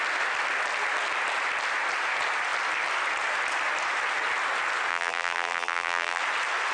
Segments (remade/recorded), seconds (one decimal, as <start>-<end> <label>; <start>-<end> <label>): 0.0-4.9 recorded; 4.9-6.2 remade; 6.2-6.7 recorded